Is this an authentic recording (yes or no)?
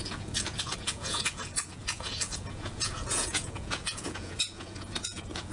no